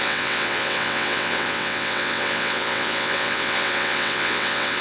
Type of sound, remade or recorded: remade